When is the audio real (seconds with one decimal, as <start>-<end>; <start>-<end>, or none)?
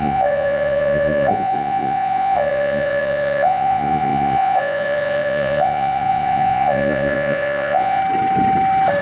8.0-9.0